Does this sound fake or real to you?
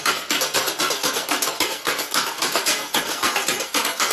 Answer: fake